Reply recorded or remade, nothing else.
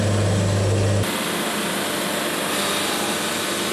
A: recorded